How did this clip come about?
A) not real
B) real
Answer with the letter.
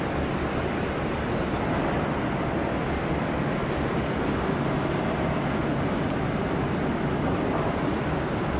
B